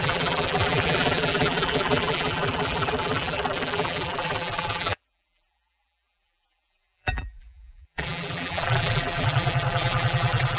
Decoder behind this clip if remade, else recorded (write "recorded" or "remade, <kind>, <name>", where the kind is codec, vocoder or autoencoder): remade, vocoder, BigVGAN v2